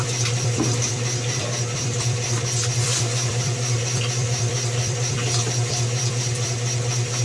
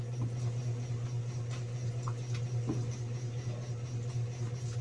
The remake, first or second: first